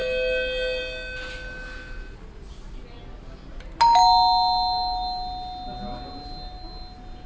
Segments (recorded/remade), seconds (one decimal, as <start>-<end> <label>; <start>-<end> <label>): 0.0-7.3 recorded